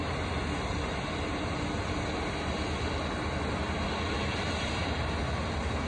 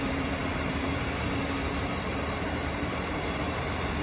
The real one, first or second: first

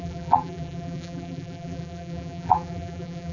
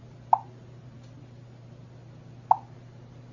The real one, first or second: second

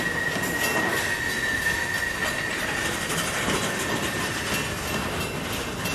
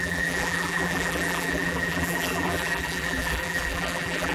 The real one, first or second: first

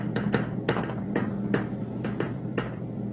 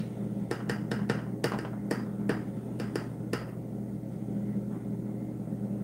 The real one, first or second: second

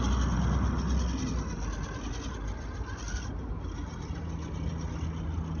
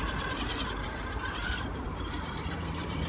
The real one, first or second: first